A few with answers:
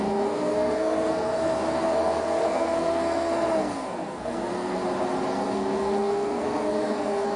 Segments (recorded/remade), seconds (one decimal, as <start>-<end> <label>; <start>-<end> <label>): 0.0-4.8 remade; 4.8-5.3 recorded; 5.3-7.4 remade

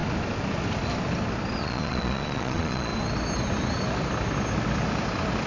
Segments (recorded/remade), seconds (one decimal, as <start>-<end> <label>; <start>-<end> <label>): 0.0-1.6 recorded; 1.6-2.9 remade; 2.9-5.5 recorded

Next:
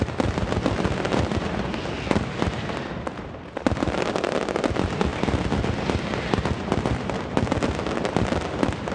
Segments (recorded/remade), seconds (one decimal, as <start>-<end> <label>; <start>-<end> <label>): 0.0-8.9 recorded

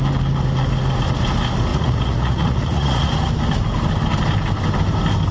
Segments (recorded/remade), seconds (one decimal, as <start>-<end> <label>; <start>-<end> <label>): 0.0-1.7 recorded; 1.7-3.1 remade; 3.1-5.3 recorded